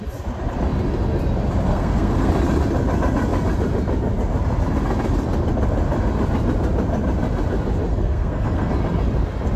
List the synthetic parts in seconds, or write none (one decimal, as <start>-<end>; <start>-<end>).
1.7-2.3; 7.9-8.7